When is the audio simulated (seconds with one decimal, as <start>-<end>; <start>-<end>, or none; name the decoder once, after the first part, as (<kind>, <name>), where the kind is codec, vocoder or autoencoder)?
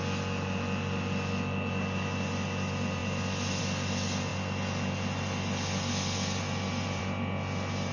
none